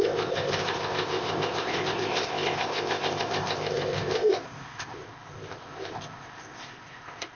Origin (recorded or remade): remade